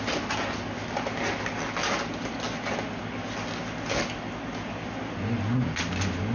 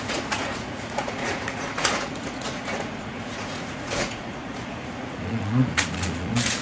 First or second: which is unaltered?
first